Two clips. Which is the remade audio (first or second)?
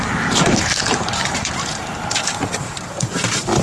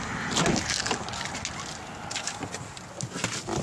first